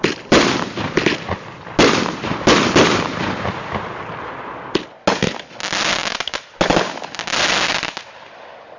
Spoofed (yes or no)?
no